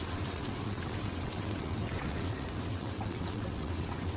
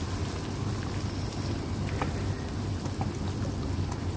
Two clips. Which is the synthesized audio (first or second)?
first